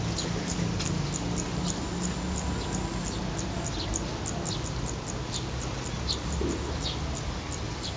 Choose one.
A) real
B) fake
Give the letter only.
A